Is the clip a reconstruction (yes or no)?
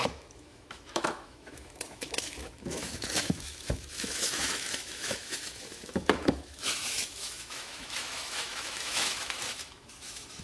yes